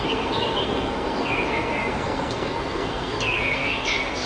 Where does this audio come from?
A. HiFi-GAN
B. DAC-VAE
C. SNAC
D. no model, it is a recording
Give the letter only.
C